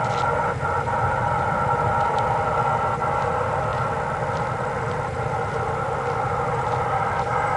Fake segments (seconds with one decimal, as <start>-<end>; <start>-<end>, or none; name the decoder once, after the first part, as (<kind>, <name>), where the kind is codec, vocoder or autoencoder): 0.0-3.7 (vocoder, BigVGAN v2); 4.7-7.6